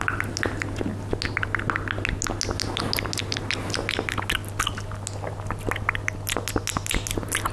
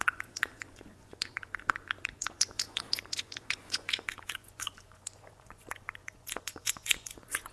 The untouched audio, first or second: first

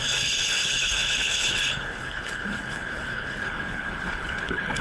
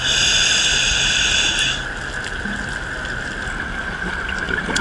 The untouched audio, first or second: second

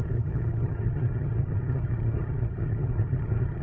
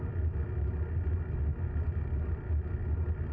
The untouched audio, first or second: second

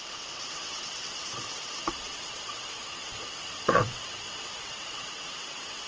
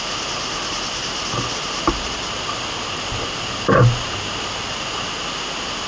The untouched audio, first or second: second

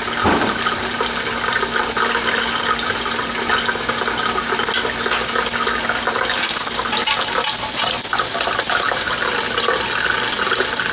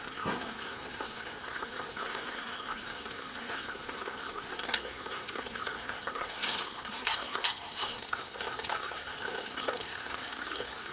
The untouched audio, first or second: first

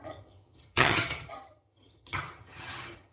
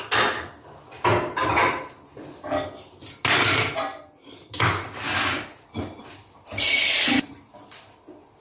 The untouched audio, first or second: second